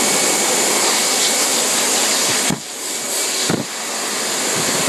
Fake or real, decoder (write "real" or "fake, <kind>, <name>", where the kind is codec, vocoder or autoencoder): real